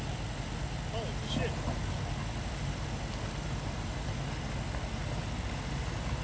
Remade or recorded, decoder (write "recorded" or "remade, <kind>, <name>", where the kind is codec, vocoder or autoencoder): recorded